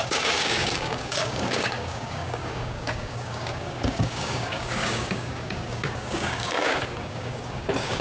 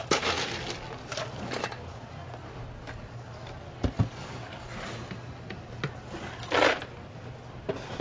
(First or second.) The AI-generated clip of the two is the first